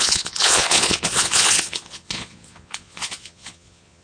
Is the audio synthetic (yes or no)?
yes